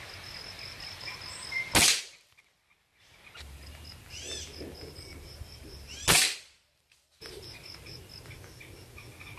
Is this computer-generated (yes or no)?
no